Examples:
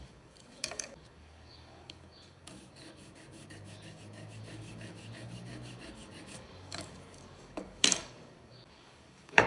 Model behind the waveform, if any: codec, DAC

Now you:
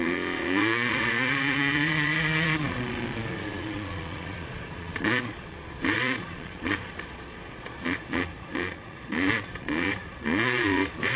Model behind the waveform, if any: vocoder, Vocos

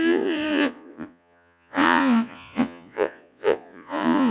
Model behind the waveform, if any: vocoder, Vocos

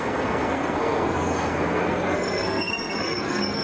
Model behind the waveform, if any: codec, SNAC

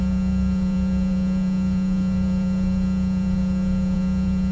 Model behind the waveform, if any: vocoder, Vocos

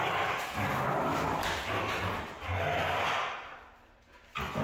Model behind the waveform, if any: none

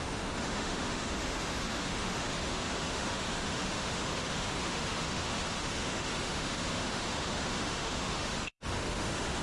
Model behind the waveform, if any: autoencoder, DAC-VAE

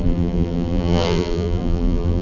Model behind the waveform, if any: vocoder, BigVGAN v2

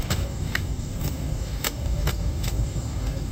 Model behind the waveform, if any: codec, DAC